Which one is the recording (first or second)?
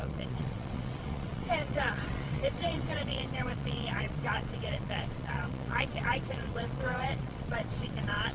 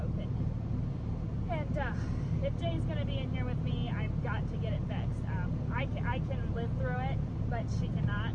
second